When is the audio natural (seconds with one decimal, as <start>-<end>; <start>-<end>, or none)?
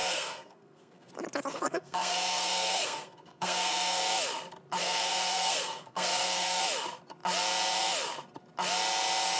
1.1-1.5; 4.0-4.8; 6.6-9.4